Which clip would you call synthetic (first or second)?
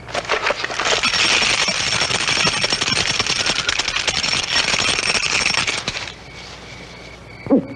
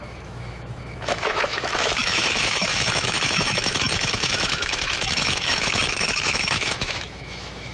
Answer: second